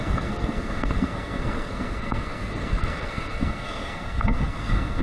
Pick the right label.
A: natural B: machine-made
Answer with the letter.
B